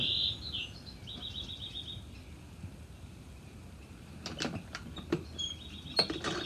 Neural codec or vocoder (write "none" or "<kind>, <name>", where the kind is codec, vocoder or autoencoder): none